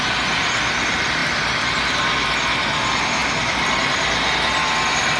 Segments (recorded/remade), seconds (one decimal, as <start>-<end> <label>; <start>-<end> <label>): 0.0-5.2 recorded